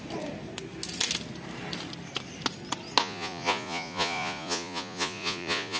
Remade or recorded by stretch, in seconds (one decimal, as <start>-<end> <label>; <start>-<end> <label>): 0.0-3.0 recorded; 3.0-5.8 remade

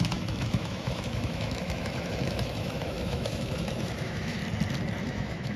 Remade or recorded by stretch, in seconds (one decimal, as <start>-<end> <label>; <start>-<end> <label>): 0.0-4.4 remade; 4.4-5.0 recorded; 5.0-5.6 remade